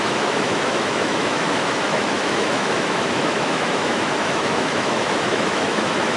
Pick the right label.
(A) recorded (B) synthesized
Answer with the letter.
B